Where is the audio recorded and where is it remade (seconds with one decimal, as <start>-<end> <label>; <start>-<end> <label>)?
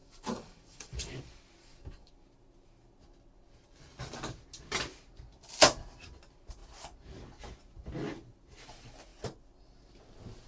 0.0-1.2 remade; 1.2-1.6 recorded; 1.6-2.1 remade; 2.1-10.5 recorded